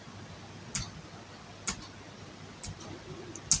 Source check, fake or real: real